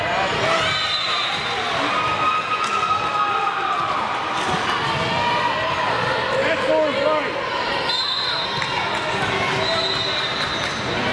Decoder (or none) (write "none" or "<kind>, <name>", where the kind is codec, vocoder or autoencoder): none